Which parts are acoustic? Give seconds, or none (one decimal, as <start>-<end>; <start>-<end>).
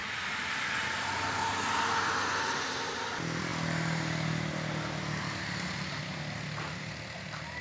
0.0-7.6